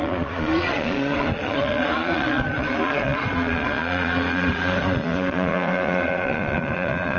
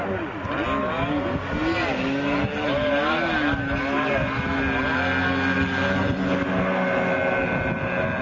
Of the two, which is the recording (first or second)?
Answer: second